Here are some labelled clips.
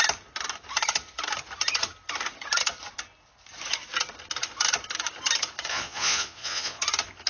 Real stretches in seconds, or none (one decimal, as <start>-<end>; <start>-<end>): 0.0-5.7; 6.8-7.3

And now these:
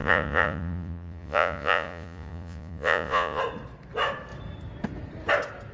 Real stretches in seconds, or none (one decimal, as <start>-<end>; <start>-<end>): 3.4-5.7

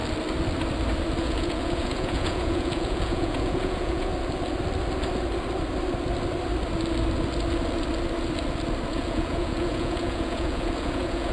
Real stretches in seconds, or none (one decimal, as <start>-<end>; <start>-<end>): 0.0-1.2; 4.1-8.9